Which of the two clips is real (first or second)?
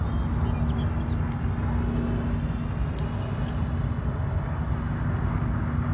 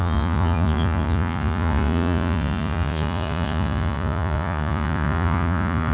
first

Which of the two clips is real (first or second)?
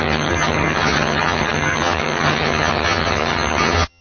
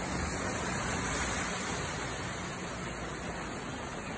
second